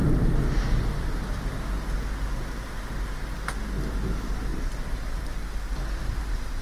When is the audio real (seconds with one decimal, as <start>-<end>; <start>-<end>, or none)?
0.5-4.5; 5.7-6.6